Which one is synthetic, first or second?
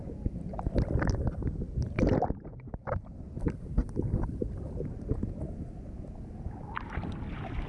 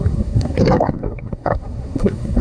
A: second